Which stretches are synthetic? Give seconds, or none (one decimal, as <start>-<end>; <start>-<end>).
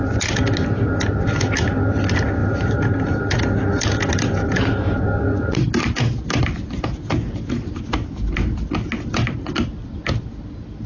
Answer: 2.4-3.4